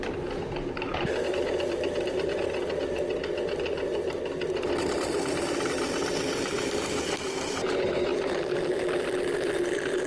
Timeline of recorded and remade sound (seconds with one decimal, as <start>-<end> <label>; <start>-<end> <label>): 0.0-10.1 recorded